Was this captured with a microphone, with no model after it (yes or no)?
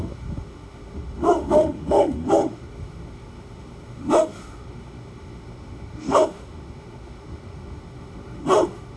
no